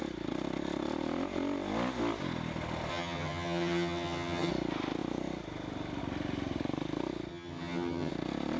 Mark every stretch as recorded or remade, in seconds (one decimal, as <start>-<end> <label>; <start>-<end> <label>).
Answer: 0.0-2.9 recorded; 2.9-4.5 remade; 4.5-7.3 recorded; 7.3-8.1 remade; 8.1-8.6 recorded